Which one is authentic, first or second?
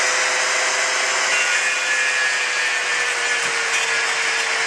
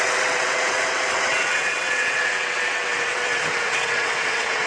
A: first